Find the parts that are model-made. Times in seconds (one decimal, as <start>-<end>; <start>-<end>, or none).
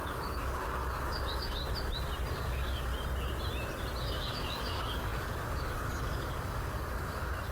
0.0-1.6; 2.3-2.9; 4.0-7.5